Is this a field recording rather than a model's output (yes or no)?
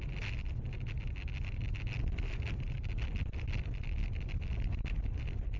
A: yes